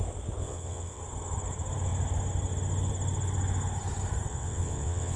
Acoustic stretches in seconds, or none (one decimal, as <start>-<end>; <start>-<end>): 0.0-0.4; 1.0-4.3